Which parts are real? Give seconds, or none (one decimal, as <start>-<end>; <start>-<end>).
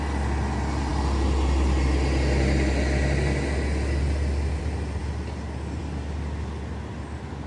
0.0-7.5